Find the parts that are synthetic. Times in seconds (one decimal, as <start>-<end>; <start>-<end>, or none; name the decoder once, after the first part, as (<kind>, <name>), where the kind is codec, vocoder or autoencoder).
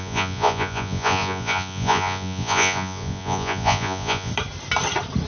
0.0-4.3 (vocoder, Vocos)